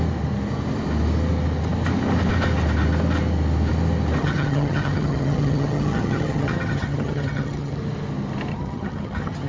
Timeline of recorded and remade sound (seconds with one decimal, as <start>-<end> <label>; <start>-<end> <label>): 0.0-4.2 recorded; 4.2-7.8 remade; 7.8-8.5 recorded; 8.5-9.5 remade